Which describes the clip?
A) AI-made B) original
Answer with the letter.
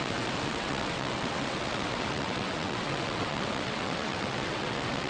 A